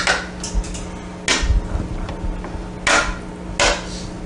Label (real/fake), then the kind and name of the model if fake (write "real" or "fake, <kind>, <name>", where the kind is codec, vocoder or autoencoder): real